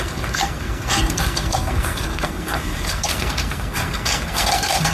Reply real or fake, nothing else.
fake